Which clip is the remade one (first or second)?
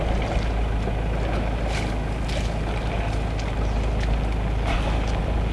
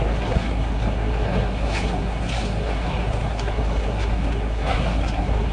second